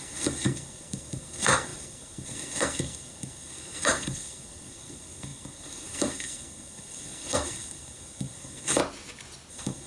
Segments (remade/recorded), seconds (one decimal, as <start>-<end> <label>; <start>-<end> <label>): 0.0-8.8 remade; 8.8-9.5 recorded; 9.5-9.9 remade